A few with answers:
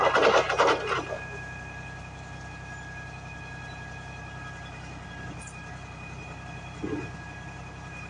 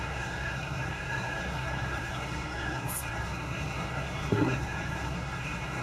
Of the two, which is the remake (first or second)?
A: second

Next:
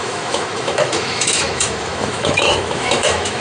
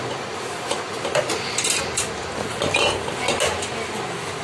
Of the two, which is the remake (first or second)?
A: first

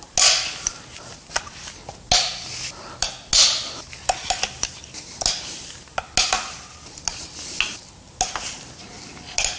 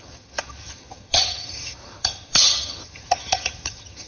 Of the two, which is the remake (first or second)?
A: second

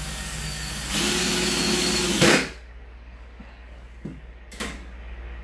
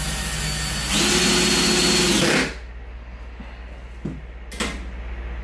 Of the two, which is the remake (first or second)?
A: first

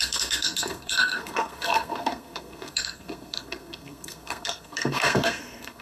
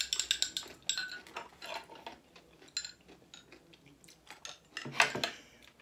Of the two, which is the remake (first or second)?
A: first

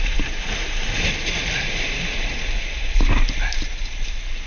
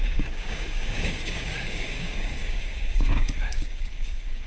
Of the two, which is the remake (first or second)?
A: second